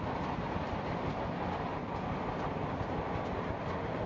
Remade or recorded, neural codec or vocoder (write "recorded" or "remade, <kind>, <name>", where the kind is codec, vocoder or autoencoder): recorded